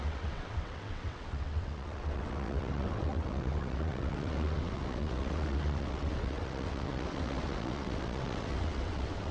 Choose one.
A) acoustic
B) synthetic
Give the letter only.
B